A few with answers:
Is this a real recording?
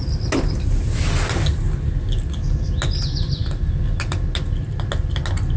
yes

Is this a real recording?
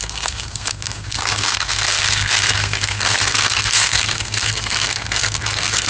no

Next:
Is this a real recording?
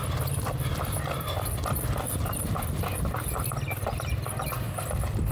yes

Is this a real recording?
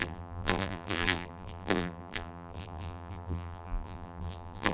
no